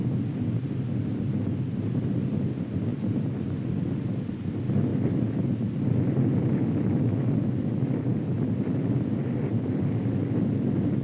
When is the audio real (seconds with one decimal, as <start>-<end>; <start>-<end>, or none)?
0.0-11.0